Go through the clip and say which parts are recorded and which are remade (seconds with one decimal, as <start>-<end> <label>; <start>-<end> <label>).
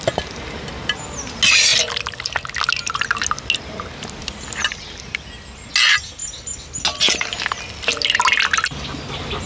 0.0-4.2 recorded; 4.2-5.7 remade; 5.7-9.5 recorded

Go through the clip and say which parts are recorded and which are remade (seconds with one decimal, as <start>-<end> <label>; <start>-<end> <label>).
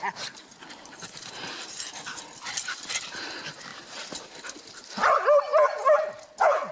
0.0-3.7 recorded; 3.7-4.4 remade; 4.4-6.7 recorded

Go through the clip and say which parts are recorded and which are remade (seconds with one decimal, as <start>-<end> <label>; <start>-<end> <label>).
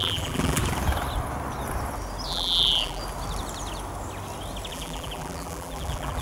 0.0-0.6 remade; 0.6-2.3 recorded; 2.3-3.0 remade; 3.0-4.7 recorded; 4.7-6.2 remade